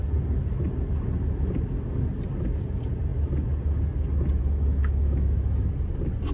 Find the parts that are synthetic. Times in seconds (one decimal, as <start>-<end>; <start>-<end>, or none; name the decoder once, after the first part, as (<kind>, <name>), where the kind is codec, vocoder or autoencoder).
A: 4.4-5.7 (autoencoder, DAC-VAE)